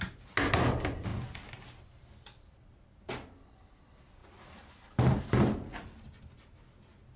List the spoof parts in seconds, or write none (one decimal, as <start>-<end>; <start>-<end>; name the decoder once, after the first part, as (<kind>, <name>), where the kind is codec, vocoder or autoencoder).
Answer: none